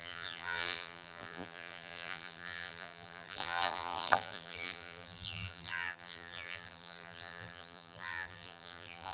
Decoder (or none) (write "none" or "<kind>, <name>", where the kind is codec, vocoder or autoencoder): vocoder, BigVGAN v2